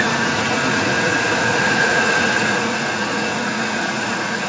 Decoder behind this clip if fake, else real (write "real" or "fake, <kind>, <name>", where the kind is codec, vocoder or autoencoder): fake, vocoder, Vocos